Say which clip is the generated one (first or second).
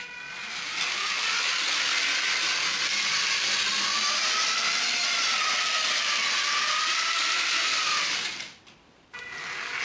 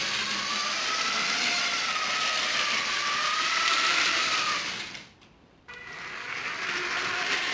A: second